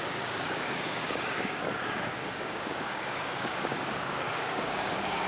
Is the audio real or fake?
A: fake